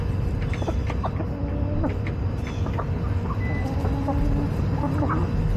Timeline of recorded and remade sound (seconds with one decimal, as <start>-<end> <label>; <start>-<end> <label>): 0.0-5.6 recorded